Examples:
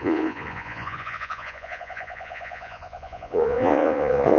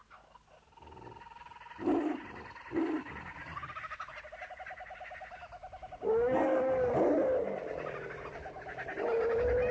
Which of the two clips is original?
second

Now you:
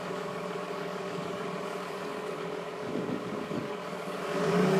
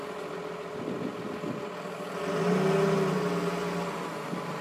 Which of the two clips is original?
second